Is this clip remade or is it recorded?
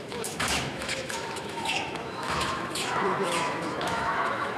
remade